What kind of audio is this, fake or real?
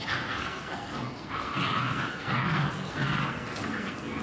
fake